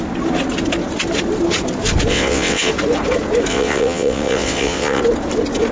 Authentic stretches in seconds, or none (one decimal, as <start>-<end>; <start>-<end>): 0.0-2.1; 2.7-3.5; 5.0-5.7